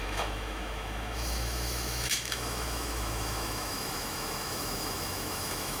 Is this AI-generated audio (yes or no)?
yes